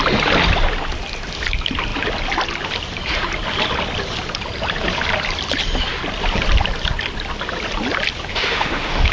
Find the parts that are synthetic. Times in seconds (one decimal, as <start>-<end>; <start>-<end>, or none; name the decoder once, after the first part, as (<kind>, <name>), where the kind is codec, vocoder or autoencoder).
8.3-9.1 (autoencoder, DAC-VAE)